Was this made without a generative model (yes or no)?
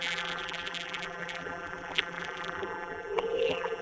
no